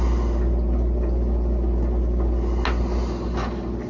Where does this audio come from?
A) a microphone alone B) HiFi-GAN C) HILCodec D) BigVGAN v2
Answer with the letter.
A